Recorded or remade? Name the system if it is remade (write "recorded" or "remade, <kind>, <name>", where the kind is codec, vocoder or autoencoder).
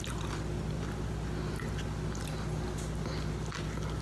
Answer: recorded